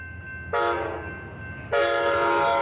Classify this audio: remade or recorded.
recorded